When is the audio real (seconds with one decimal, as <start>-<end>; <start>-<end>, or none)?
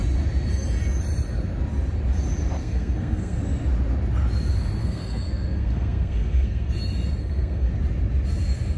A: 0.0-2.6; 3.4-4.8; 6.7-7.2; 7.7-8.8